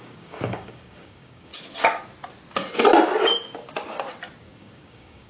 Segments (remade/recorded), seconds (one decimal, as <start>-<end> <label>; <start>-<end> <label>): 0.0-1.5 remade; 1.5-4.4 recorded; 4.4-5.3 remade